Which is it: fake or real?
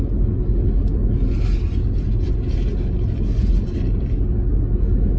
real